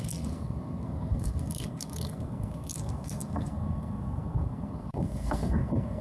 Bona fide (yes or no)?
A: no